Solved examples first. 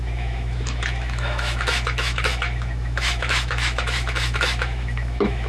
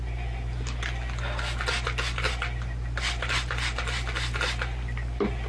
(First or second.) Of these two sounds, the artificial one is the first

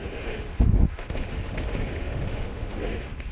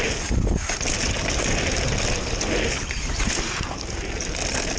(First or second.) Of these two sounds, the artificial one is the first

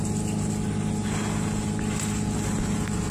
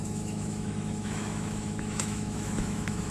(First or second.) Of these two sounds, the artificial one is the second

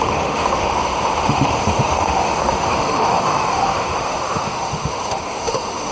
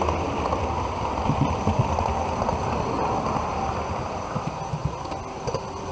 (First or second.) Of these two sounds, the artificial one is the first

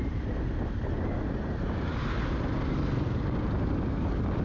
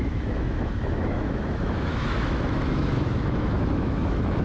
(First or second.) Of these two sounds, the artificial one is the second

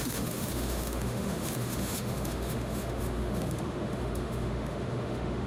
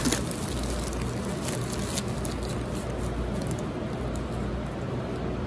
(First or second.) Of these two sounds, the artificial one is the first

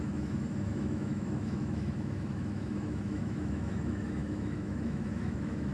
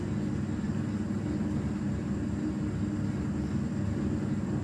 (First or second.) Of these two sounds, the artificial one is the first